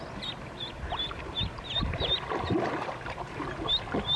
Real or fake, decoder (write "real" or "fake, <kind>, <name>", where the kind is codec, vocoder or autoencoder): fake, vocoder, BigVGAN v2